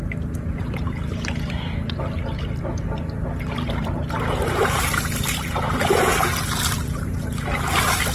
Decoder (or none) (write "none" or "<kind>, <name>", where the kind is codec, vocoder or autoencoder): none